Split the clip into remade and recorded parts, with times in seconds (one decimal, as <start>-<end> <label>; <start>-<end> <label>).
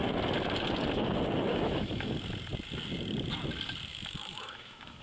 0.0-1.5 recorded; 1.5-2.1 remade; 2.1-3.9 recorded; 3.9-5.0 remade